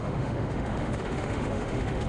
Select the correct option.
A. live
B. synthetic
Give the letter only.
B